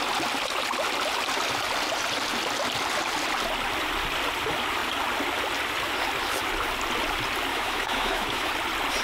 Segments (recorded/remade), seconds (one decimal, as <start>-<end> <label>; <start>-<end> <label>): 0.0-7.5 recorded; 7.5-8.5 remade; 8.5-9.0 recorded